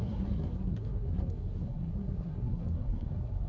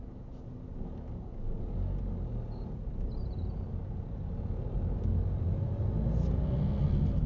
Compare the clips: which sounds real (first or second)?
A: second